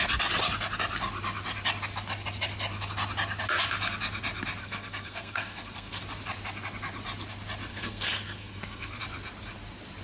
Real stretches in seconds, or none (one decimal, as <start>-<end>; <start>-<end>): 0.0-4.6; 6.0-7.7; 9.0-10.0